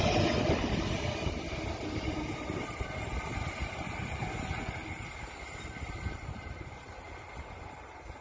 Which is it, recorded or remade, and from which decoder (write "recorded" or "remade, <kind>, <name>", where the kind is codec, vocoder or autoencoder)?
recorded